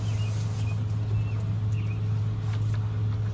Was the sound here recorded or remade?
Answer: recorded